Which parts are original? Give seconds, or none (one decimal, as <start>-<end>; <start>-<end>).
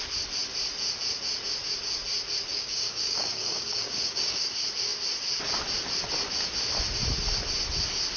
0.0-2.5; 4.5-8.2